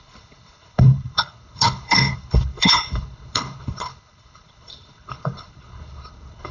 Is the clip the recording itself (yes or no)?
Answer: no